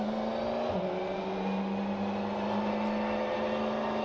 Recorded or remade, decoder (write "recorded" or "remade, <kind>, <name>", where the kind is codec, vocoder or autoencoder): recorded